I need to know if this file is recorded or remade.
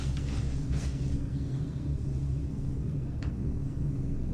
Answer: remade